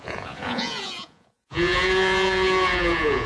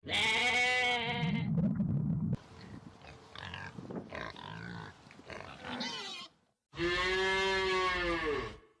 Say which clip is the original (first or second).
second